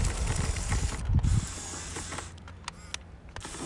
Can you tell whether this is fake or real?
real